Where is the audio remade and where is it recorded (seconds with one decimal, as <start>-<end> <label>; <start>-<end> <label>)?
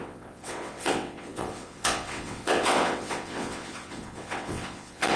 0.0-5.2 remade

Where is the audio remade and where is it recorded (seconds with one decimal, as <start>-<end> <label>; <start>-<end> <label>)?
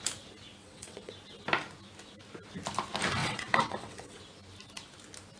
0.0-0.6 recorded; 0.6-1.1 remade; 1.1-3.2 recorded; 3.2-4.2 remade; 4.2-5.4 recorded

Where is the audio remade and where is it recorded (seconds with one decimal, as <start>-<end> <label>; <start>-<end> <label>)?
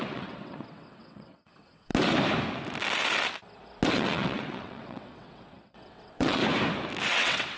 0.0-1.9 remade; 1.9-3.9 recorded; 3.9-6.4 remade; 6.4-7.1 recorded; 7.1-7.6 remade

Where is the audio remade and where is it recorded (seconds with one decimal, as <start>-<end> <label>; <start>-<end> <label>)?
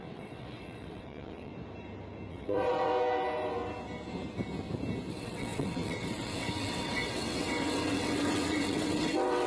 0.0-1.5 remade; 1.5-2.3 recorded; 2.3-2.9 remade; 2.9-5.1 recorded; 5.1-9.5 remade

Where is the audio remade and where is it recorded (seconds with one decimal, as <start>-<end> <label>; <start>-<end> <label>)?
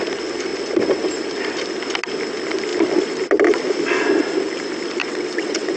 0.0-5.0 recorded; 5.0-5.8 remade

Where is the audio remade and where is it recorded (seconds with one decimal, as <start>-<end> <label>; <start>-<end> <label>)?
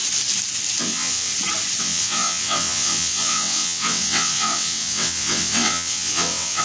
0.0-0.8 recorded; 0.8-1.3 remade; 1.3-1.8 recorded; 1.8-6.6 remade